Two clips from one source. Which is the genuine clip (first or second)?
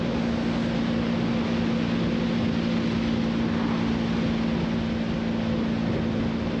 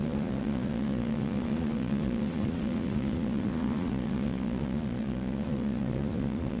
first